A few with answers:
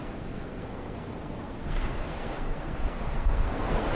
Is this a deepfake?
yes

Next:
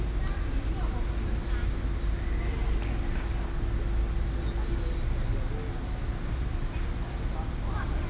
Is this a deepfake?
no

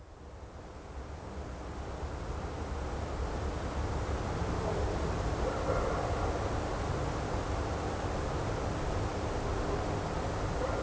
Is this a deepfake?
no